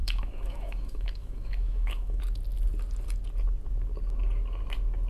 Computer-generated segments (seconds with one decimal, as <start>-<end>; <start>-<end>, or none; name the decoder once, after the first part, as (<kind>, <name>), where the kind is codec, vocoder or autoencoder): 0.0-2.2 (autoencoder, DAC-VAE)